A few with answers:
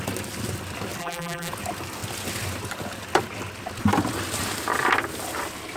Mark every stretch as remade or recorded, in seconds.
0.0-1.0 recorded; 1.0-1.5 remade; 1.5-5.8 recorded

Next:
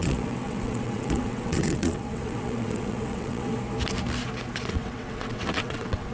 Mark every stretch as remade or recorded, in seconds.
0.0-3.6 remade; 3.6-4.7 recorded; 4.7-6.1 remade

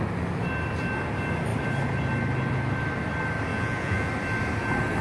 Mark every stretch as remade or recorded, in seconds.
0.0-3.5 recorded; 3.5-4.1 remade; 4.1-5.0 recorded

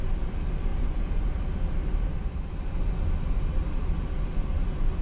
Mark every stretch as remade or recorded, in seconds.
0.0-5.0 recorded